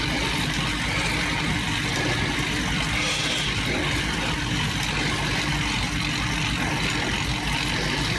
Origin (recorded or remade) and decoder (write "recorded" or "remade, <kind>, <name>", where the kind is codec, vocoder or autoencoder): recorded